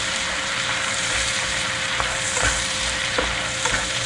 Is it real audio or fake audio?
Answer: fake